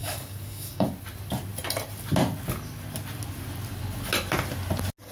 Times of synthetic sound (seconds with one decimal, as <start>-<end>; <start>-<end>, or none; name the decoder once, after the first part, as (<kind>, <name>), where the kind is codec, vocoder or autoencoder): 0.0-0.9 (codec, DAC)